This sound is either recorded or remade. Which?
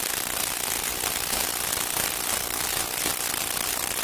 recorded